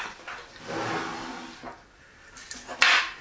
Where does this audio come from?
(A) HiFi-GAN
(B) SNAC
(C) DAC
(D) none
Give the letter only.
D